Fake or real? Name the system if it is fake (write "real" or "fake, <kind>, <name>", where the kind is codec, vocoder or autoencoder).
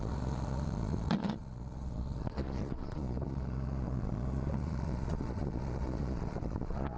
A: fake, vocoder, Vocos